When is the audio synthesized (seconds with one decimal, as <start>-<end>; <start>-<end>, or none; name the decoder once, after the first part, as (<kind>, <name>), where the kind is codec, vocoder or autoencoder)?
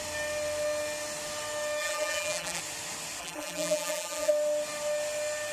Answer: 1.8-2.6 (vocoder, BigVGAN v2); 3.2-4.3